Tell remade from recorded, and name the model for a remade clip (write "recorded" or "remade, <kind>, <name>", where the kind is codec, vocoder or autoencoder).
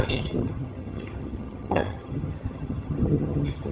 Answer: remade, vocoder, HiFi-GAN